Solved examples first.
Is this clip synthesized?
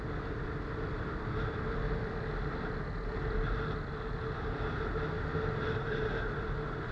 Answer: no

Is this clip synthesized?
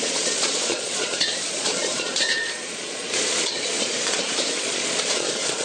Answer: yes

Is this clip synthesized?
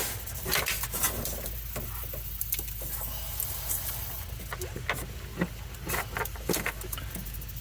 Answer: no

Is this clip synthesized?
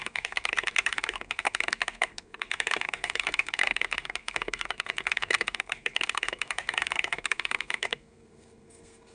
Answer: yes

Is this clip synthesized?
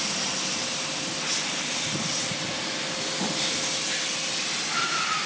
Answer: no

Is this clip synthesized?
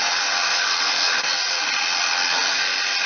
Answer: no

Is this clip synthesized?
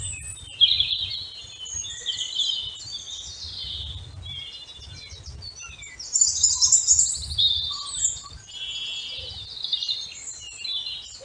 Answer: no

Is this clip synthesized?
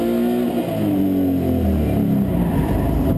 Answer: no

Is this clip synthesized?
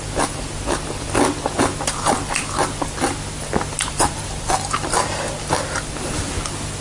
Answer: no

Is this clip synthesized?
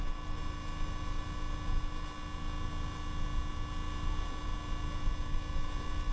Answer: no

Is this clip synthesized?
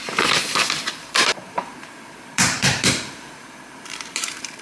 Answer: yes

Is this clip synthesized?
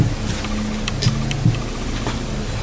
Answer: no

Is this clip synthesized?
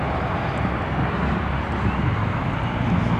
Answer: no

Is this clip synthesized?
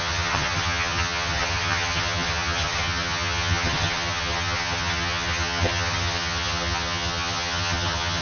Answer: yes